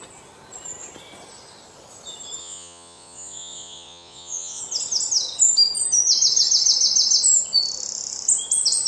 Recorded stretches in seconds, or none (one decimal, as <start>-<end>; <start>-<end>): 0.0-2.4; 4.6-8.9